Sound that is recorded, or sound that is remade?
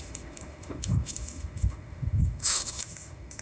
remade